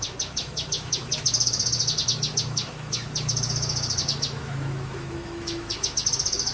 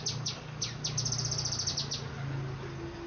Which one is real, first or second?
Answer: second